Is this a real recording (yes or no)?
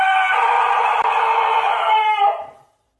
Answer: no